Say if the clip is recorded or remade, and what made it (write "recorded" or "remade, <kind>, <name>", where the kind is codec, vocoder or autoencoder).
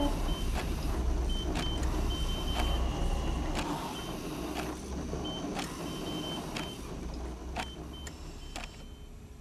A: recorded